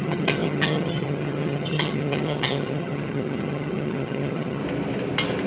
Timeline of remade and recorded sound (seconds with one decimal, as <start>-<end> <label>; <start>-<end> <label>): 0.0-4.6 remade; 4.6-5.5 recorded